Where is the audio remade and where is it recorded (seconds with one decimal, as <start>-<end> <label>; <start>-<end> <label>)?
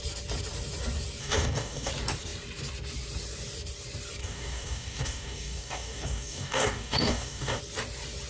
0.0-1.2 recorded; 1.2-1.9 remade; 1.9-4.2 recorded; 4.2-7.6 remade; 7.6-8.3 recorded